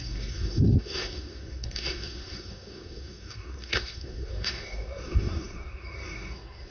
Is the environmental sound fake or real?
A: fake